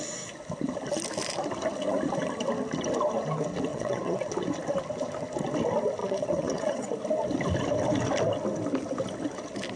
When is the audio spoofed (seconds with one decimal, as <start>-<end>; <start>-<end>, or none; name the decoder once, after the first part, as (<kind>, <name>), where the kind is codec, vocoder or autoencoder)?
3.7-4.3 (vocoder, WaveNeXt); 6.0-6.9